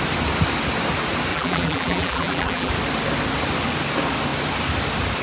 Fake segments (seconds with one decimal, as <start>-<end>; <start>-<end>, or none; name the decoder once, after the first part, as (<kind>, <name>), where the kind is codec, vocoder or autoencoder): 1.3-2.7 (vocoder, BigVGAN v2)